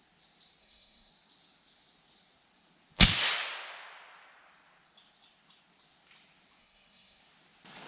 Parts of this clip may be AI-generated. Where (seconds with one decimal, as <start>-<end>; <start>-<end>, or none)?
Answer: 0.6-1.1; 6.6-7.2